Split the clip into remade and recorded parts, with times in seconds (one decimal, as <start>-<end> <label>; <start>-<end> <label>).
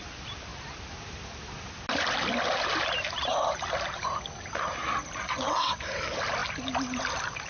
0.0-5.2 recorded; 5.2-5.8 remade; 5.8-7.5 recorded